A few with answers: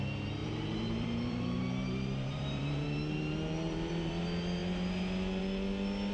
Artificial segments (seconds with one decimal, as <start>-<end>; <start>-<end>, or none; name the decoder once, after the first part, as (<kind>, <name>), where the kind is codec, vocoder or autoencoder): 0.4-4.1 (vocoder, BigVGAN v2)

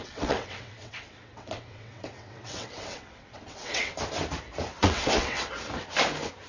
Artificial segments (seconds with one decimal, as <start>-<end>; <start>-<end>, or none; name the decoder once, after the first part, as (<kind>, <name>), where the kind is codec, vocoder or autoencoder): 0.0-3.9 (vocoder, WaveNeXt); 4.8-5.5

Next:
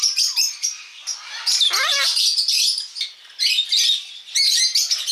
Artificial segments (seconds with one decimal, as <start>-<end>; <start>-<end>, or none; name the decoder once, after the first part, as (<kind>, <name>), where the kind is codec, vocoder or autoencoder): none

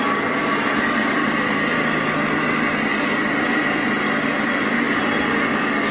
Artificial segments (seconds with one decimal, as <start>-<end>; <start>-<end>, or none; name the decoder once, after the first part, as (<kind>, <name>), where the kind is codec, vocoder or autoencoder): none

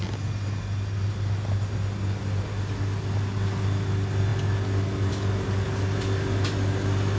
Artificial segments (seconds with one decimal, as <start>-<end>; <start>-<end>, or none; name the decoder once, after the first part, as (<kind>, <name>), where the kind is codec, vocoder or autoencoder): none

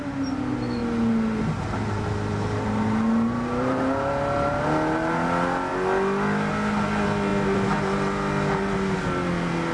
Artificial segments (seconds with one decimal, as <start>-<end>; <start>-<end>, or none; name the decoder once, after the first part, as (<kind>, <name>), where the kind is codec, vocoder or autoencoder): none

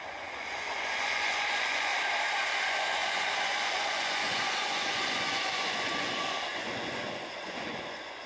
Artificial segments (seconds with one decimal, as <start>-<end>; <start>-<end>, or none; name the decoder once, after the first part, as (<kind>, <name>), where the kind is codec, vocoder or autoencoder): 0.0-1.9 (vocoder, Vocos); 2.5-8.3